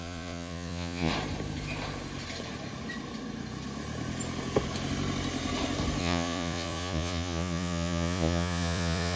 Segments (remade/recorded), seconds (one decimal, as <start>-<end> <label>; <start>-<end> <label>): 0.0-1.1 remade; 1.1-6.0 recorded; 6.0-9.2 remade